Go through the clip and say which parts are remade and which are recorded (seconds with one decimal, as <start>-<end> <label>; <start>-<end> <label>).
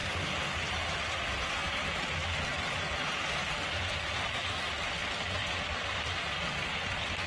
0.0-0.6 remade; 0.6-3.4 recorded; 3.4-4.2 remade; 4.2-5.4 recorded; 5.4-6.2 remade; 6.2-7.3 recorded